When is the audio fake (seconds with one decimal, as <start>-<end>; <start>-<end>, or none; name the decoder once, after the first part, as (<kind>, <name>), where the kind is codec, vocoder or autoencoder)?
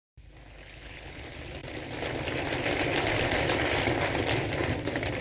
0.6-1.2 (codec, HILCodec)